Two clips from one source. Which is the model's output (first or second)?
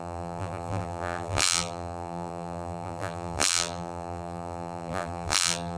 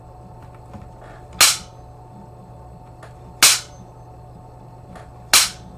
first